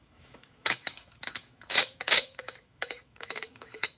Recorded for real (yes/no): no